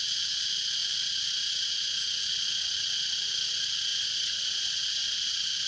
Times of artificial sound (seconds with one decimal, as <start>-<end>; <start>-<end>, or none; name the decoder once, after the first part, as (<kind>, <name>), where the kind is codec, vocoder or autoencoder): 3.9-4.7 (vocoder, Vocos)

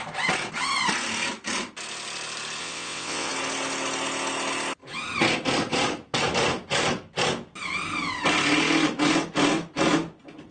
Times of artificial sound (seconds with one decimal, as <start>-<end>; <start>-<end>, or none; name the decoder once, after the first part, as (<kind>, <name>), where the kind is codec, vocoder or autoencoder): 2.6-3.3 (vocoder, WaveNeXt)

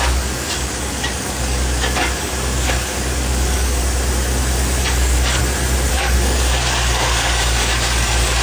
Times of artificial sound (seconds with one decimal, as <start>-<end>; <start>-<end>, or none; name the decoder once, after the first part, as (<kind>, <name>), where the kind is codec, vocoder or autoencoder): 0.0-3.8 (codec, DAC); 4.8-5.4; 5.9-8.4

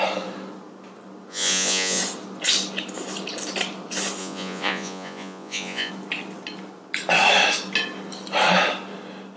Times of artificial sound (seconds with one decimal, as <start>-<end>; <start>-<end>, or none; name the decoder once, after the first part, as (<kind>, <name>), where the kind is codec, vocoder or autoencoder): 1.3-2.0 (vocoder, Vocos); 4.2-5.9